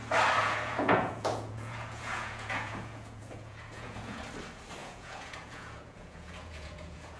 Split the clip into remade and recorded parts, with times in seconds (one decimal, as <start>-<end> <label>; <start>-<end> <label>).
0.0-0.4 recorded; 0.4-4.2 remade; 4.2-4.8 recorded; 4.8-7.2 remade